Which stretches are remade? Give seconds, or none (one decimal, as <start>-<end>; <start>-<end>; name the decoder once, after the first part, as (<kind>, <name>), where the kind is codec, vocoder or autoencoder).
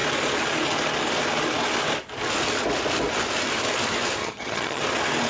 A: 4.2-4.8 (vocoder, HiFi-GAN)